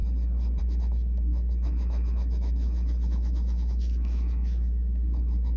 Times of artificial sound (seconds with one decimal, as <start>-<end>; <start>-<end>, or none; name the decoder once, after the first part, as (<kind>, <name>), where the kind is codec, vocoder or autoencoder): 0.6-5.6 (autoencoder, DAC-VAE)